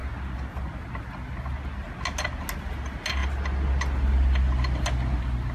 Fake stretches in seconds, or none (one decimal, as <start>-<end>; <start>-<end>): none